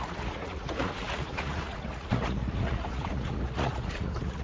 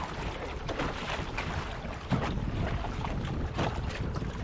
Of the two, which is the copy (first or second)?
first